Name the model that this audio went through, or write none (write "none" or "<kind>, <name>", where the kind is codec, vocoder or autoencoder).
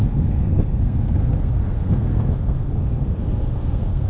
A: codec, SNAC